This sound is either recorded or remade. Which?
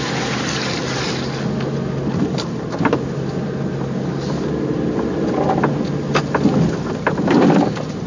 recorded